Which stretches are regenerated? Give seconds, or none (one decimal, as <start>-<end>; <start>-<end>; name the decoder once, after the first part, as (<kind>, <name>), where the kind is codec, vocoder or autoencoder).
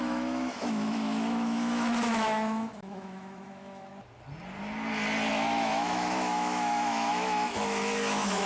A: 0.0-3.9 (autoencoder, DAC-VAE); 5.3-8.5